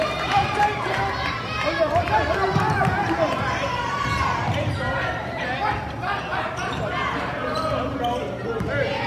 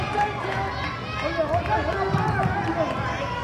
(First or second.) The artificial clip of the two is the first